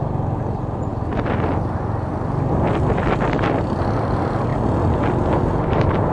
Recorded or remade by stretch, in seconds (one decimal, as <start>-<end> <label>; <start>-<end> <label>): 0.0-6.1 recorded

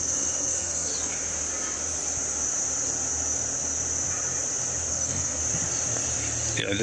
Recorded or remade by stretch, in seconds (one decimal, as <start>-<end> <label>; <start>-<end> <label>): 0.0-0.9 remade; 0.9-4.9 recorded; 4.9-5.4 remade; 5.4-6.8 recorded

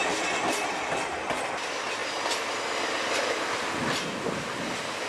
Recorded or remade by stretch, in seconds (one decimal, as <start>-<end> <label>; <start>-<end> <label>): 0.0-5.1 recorded

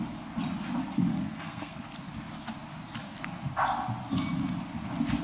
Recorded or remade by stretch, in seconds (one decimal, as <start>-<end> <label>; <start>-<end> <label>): 0.0-1.1 recorded; 1.1-1.8 remade; 1.8-5.2 recorded

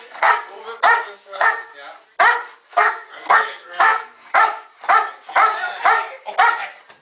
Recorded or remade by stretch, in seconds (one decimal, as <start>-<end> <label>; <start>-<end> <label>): 0.0-0.6 remade; 0.6-1.1 recorded; 1.1-1.7 remade; 1.7-2.7 recorded; 2.7-4.3 remade; 4.3-7.0 recorded

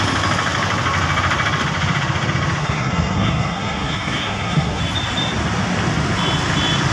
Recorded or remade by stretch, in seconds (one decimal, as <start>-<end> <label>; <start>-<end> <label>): 0.0-2.6 recorded; 2.6-4.8 remade; 4.8-6.9 recorded

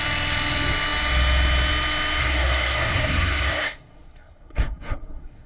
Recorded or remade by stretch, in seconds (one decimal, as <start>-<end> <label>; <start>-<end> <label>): 0.0-2.2 recorded; 2.2-5.5 remade

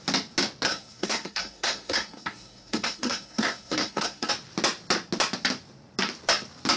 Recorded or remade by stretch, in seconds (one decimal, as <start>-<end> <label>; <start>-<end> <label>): 0.0-0.7 recorded; 0.7-4.3 remade; 4.3-6.8 recorded